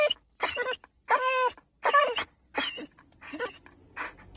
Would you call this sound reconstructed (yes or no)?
no